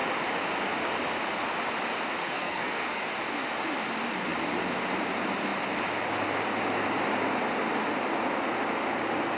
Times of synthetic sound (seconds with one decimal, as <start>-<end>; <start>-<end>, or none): 2.2-3.0